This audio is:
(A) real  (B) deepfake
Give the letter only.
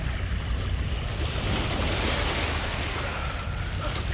A